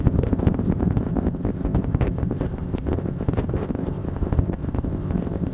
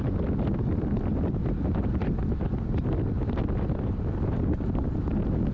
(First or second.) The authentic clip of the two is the second